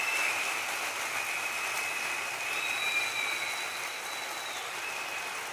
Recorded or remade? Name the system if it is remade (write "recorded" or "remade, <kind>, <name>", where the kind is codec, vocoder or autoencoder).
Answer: recorded